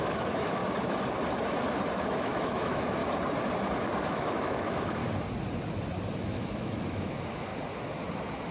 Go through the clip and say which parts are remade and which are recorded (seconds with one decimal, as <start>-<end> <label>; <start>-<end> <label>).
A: 0.0-0.6 remade; 0.6-1.9 recorded; 1.9-3.0 remade; 3.0-4.0 recorded; 4.0-5.0 remade; 5.0-6.2 recorded; 6.2-7.5 remade; 7.5-8.5 recorded